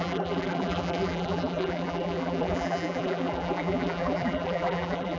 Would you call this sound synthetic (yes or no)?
yes